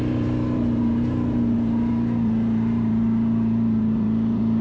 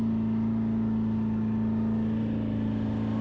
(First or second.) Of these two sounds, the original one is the second